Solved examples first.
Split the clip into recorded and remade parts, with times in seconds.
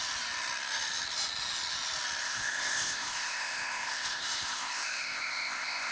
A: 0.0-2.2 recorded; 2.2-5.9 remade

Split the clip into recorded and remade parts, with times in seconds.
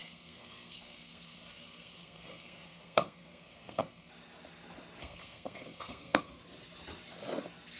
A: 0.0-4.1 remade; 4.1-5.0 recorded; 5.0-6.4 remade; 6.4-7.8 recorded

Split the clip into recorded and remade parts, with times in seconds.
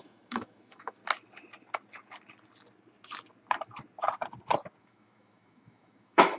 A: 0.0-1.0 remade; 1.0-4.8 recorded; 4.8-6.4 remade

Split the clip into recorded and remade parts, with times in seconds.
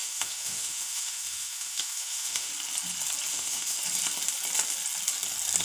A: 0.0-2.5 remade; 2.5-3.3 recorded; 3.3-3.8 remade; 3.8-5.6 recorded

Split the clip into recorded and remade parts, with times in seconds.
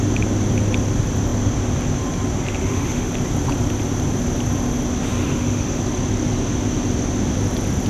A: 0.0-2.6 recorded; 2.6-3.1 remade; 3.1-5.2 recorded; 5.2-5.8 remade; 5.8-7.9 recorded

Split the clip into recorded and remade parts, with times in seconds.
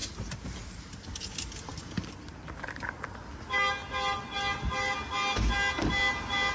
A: 0.0-6.5 recorded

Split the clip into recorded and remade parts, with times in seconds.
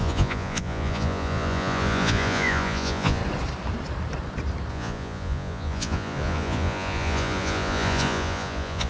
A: 0.0-3.2 remade; 3.2-4.7 recorded; 4.7-8.9 remade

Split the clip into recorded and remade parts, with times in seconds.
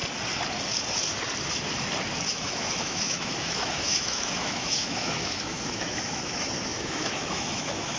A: 0.0-2.3 recorded; 2.3-8.0 remade